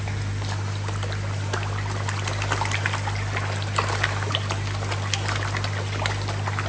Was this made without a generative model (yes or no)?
yes